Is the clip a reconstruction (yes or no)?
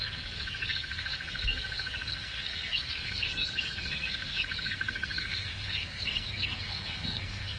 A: yes